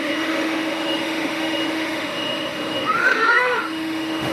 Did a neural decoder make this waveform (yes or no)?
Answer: yes